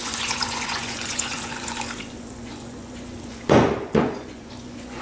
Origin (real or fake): fake